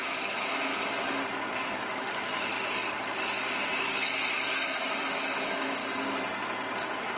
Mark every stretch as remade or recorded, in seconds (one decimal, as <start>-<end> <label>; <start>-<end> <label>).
0.0-0.7 remade; 0.7-1.5 recorded; 1.5-2.5 remade; 2.5-3.6 recorded; 3.6-5.8 remade; 5.8-6.8 recorded; 6.8-7.2 remade